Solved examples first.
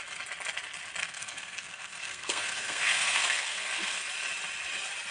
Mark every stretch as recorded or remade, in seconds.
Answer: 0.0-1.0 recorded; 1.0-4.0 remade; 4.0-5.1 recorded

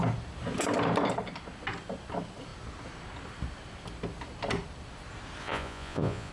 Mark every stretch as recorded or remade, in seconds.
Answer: 0.0-5.4 recorded; 5.4-6.3 remade

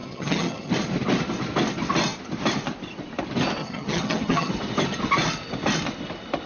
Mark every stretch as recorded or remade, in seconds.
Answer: 0.0-0.7 remade; 0.7-3.6 recorded; 3.6-4.5 remade; 4.5-6.5 recorded

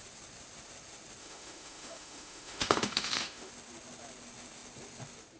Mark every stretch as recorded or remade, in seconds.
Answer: 0.0-1.2 recorded; 1.2-3.5 remade; 3.5-5.4 recorded

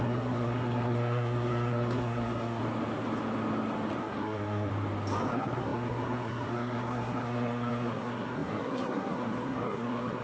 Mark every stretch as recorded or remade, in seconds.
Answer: 0.0-2.6 remade; 2.6-4.0 recorded; 4.0-4.7 remade; 4.7-5.3 recorded; 5.3-10.2 remade

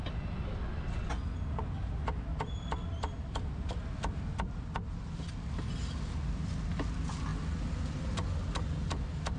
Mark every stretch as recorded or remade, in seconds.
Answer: 0.0-9.4 recorded

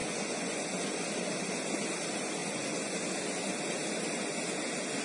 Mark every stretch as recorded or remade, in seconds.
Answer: 0.0-0.7 remade; 0.7-2.4 recorded; 2.4-3.0 remade; 3.0-5.0 recorded